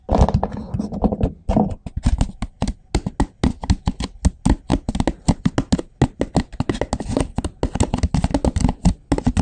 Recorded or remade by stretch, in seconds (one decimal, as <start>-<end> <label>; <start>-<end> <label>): 0.0-9.4 recorded